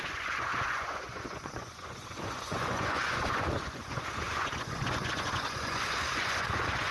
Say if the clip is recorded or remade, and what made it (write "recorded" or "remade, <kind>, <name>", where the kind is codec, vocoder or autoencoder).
remade, vocoder, Vocos